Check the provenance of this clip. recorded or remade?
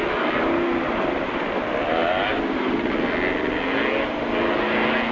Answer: recorded